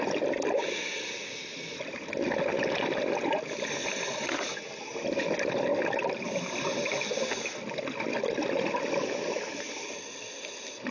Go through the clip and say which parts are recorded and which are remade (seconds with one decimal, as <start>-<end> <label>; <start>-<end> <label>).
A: 0.0-10.9 recorded